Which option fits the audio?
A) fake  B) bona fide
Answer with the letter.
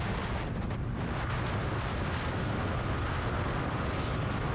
B